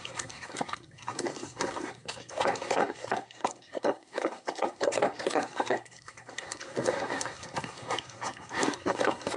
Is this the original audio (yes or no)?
no